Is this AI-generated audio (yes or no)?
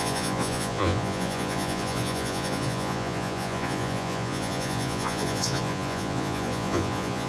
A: yes